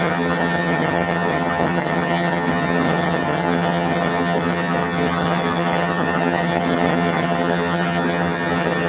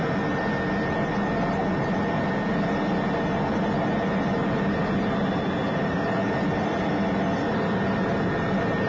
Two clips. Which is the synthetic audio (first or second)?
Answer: first